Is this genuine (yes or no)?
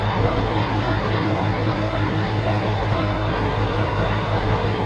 no